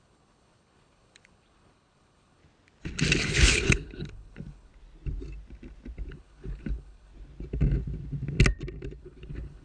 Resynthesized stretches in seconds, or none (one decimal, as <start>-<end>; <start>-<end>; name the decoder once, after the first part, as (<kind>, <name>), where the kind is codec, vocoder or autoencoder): 0.0-2.4 (codec, HILCodec); 3.3-4.7; 6.1-7.1; 9.0-9.6